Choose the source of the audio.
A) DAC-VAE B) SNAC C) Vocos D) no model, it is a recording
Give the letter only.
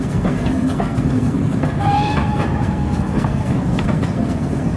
B